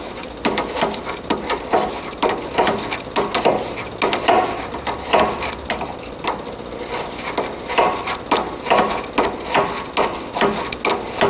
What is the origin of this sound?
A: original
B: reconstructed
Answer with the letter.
A